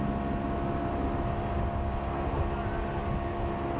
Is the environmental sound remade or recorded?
recorded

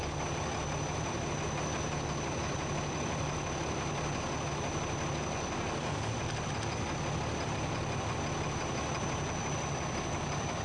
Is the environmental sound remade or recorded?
recorded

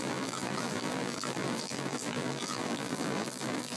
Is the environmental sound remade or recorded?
remade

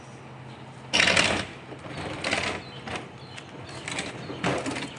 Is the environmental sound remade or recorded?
recorded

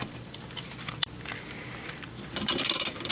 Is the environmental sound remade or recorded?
remade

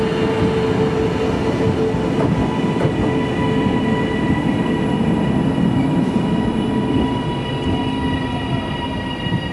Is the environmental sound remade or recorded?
recorded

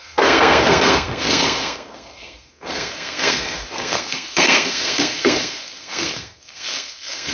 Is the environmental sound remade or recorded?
remade